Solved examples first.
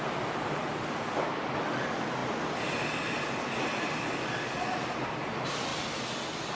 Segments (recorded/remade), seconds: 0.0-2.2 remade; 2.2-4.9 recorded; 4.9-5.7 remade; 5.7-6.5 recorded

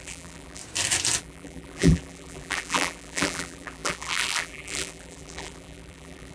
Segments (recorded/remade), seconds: 0.0-0.6 remade; 0.6-1.2 recorded; 1.2-6.3 remade

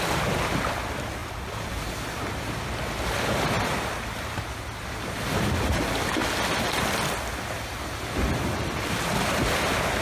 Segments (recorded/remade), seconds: 0.0-1.2 recorded; 1.2-1.7 remade; 1.7-10.0 recorded

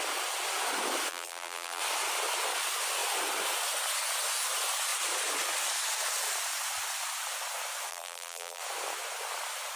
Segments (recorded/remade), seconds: 0.0-1.1 recorded; 1.1-1.8 remade; 1.8-7.9 recorded; 7.9-8.6 remade; 8.6-9.8 recorded

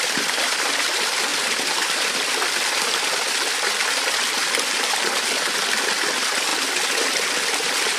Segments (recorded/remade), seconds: 0.0-6.5 remade; 6.5-8.0 recorded